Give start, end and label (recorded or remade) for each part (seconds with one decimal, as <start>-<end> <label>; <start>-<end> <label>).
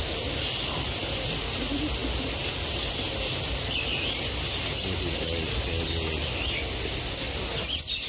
0.0-8.1 recorded